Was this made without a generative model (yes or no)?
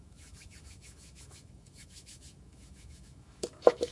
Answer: no